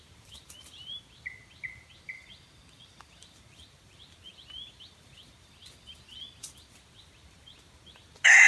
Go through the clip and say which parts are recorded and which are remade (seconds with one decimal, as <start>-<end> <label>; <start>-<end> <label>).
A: 0.0-8.5 recorded